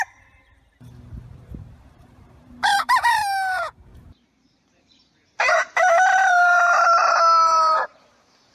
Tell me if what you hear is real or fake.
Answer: fake